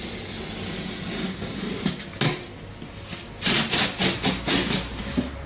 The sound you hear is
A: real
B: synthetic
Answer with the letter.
A